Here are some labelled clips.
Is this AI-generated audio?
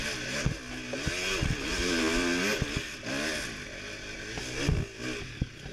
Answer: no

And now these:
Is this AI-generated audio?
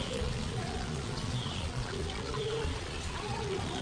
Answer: yes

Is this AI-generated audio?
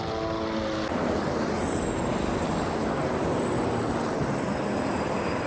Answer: no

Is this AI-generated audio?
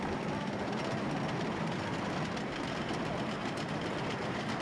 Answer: no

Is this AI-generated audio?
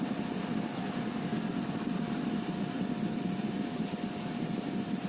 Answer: no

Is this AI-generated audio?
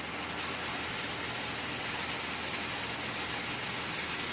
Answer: no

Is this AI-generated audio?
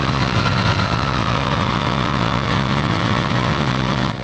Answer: yes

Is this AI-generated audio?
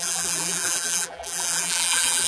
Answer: yes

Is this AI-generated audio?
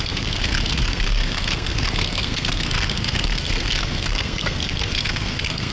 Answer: yes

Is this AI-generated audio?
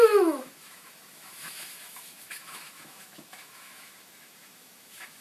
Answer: yes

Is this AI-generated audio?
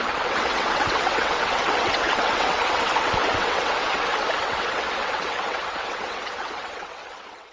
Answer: yes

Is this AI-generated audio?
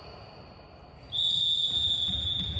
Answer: no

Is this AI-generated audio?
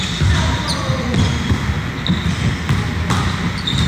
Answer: no